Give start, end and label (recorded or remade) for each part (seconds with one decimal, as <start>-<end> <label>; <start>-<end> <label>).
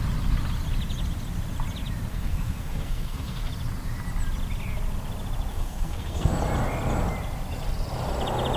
0.0-2.1 recorded; 2.1-3.5 remade; 3.5-5.5 recorded; 5.5-6.3 remade; 6.3-8.6 recorded